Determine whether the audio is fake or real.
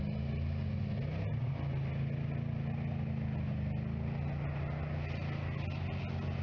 real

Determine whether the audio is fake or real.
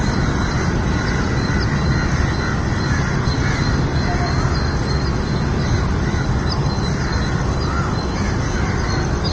real